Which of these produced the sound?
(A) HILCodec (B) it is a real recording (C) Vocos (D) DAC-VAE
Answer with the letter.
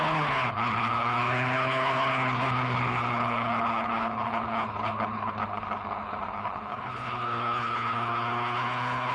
A